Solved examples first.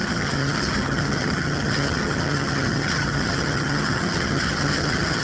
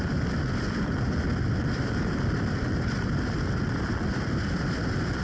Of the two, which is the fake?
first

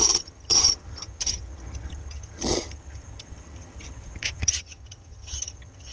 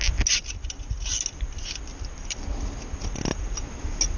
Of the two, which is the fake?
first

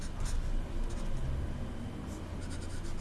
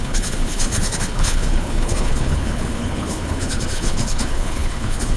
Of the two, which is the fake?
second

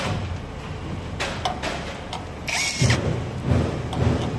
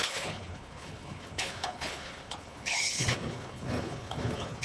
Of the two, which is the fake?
second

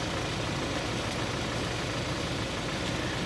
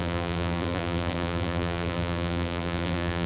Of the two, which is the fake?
second